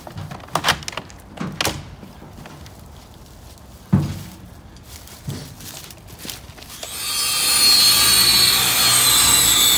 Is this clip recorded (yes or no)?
yes